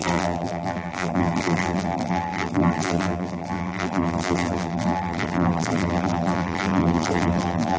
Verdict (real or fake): fake